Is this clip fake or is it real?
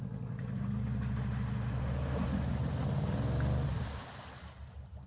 real